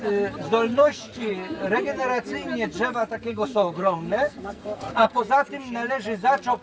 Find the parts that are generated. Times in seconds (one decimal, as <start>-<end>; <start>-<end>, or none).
0.7-1.3; 3.3-5.2